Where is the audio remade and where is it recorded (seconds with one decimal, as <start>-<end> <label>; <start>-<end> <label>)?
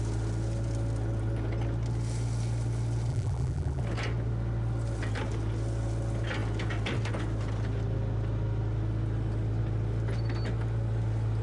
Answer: 0.0-3.1 recorded; 3.1-3.8 remade; 3.8-11.4 recorded